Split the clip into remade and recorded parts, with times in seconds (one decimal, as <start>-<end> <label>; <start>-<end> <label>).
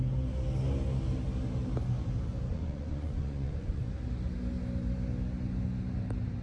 0.0-2.5 recorded; 2.5-3.8 remade; 3.8-6.4 recorded